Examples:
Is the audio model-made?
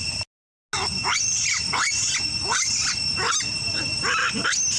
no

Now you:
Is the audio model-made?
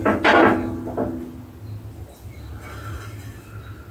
no